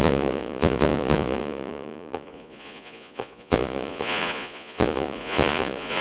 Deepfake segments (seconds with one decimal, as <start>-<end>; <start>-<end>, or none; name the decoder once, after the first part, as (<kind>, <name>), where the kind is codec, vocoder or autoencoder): 0.0-6.0 (vocoder, Vocos)